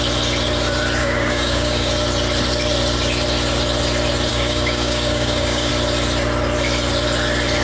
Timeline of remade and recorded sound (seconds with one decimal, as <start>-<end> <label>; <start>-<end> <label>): 0.0-1.0 recorded; 1.0-1.9 remade; 1.9-4.3 recorded; 4.3-5.7 remade; 5.7-7.6 recorded